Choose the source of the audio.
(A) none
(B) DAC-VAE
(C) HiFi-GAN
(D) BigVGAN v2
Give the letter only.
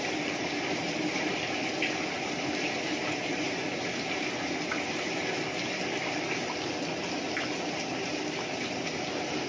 A